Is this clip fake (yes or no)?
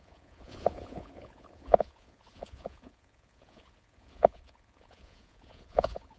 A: yes